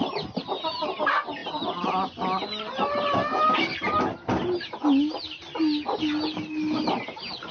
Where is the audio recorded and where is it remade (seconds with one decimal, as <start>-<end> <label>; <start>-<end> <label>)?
0.0-7.5 recorded